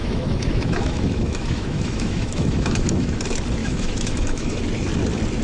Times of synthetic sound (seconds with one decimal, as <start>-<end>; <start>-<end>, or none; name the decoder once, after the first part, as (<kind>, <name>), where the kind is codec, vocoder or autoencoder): 0.0-3.2 (autoencoder, DAC-VAE); 3.6-4.6